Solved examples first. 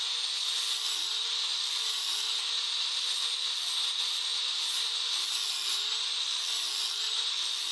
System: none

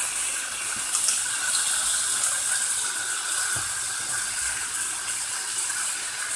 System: none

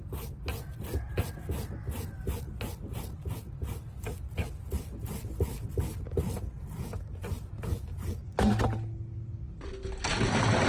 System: none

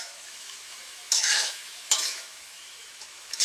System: autoencoder, DAC-VAE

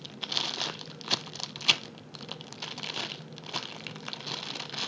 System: none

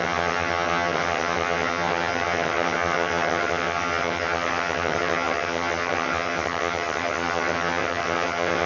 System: vocoder, HiFi-GAN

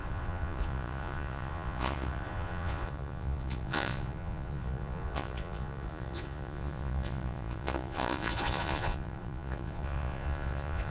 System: vocoder, Vocos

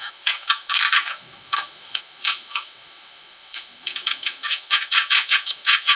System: autoencoder, DAC-VAE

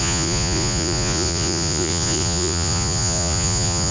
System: vocoder, Vocos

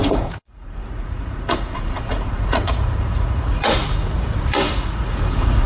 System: vocoder, Vocos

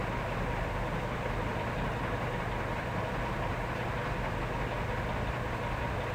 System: none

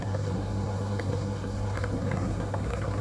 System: codec, SNAC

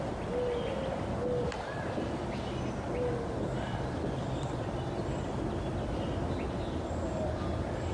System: none